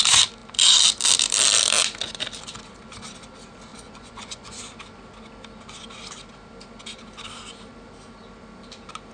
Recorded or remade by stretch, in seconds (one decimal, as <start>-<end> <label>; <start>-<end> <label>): 0.0-3.7 recorded; 3.7-4.6 remade; 4.6-9.1 recorded